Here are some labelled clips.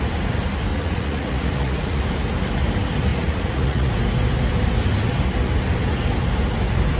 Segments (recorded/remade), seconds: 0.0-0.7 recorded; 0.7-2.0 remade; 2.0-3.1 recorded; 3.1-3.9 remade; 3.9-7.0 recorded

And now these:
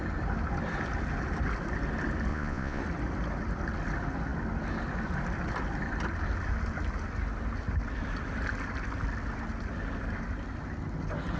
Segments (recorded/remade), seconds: 0.0-2.3 recorded; 2.3-2.8 remade; 2.8-11.4 recorded

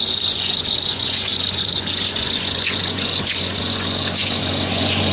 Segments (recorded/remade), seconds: 0.0-5.1 remade

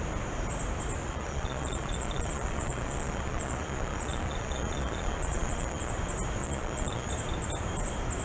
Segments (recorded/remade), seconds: 0.0-1.0 recorded; 1.0-5.9 remade; 5.9-6.4 recorded; 6.4-7.1 remade; 7.1-8.2 recorded

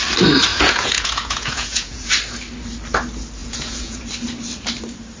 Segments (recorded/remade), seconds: 0.0-0.5 recorded; 0.5-2.1 remade; 2.1-3.4 recorded; 3.4-4.0 remade; 4.0-5.2 recorded

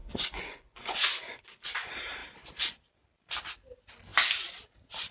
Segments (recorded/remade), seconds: 0.0-1.4 remade; 1.4-5.1 recorded